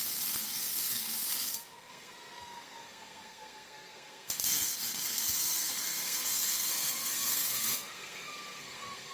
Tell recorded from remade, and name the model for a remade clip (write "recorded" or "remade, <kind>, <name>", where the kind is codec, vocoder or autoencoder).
remade, codec, SNAC